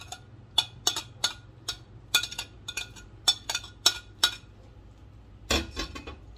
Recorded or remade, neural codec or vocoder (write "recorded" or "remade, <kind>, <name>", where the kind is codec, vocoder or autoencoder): recorded